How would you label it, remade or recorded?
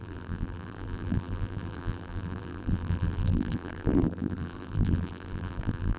remade